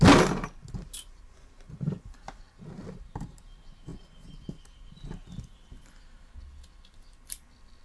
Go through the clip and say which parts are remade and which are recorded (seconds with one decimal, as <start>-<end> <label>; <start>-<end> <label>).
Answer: 0.0-7.8 recorded